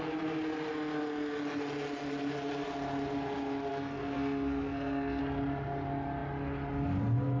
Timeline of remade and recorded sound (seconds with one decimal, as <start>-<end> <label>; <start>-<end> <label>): 0.0-3.7 recorded; 3.7-5.2 remade; 5.2-7.4 recorded